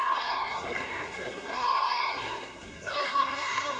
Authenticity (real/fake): fake